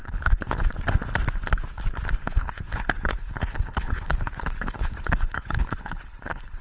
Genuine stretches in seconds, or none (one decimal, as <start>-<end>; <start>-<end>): 0.7-2.2